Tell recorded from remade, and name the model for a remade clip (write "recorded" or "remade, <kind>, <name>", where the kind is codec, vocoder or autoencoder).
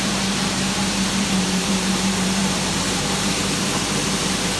remade, vocoder, BigVGAN v2